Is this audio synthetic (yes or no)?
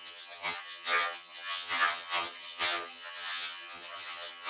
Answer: yes